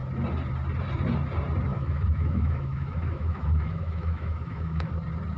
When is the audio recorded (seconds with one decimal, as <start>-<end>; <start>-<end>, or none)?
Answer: 0.0-1.7; 4.9-5.4